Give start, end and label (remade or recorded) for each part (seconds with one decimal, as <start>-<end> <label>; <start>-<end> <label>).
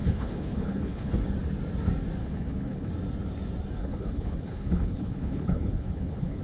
0.0-1.2 remade; 1.2-2.2 recorded; 2.2-2.9 remade; 2.9-3.8 recorded; 3.8-6.4 remade